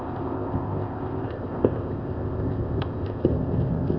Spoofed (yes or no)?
yes